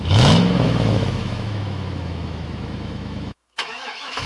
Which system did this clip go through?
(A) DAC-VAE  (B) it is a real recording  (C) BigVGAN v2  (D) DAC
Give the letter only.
A